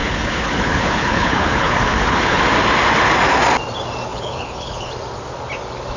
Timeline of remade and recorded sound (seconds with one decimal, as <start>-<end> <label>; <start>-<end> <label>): 0.0-2.4 remade; 2.4-4.1 recorded; 4.1-4.9 remade; 4.9-6.0 recorded